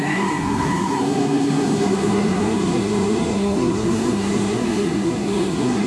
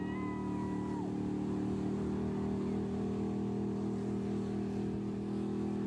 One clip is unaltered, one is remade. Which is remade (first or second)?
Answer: first